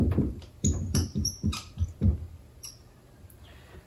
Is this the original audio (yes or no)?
no